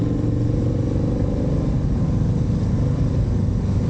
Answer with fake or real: real